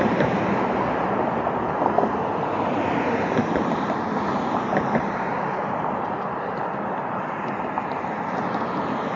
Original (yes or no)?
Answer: yes